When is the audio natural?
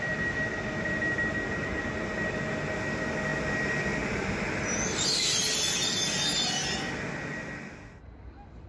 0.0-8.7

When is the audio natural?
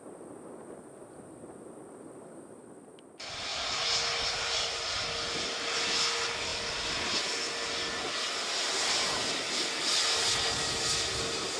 0.0-11.6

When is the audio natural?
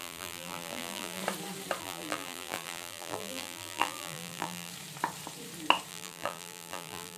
1.2-1.8; 4.7-5.9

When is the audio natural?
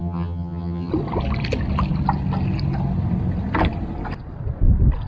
0.9-5.1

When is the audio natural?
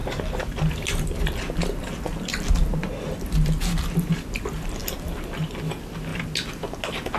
0.0-4.1; 6.1-7.2